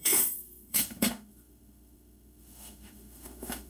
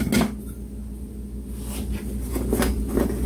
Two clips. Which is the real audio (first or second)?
second